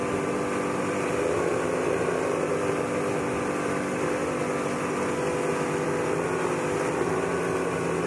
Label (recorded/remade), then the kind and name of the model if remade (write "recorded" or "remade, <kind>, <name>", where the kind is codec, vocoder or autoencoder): recorded